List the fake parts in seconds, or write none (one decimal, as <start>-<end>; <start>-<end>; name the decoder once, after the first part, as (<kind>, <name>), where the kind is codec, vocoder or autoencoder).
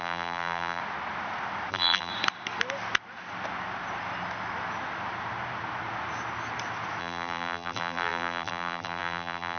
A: 0.0-0.8 (vocoder, BigVGAN v2); 1.7-2.1; 7.0-9.6